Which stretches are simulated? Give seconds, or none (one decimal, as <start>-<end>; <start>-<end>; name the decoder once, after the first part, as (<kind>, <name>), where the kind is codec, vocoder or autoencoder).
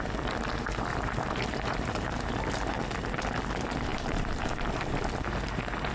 0.9-2.8 (vocoder, BigVGAN v2); 3.9-5.9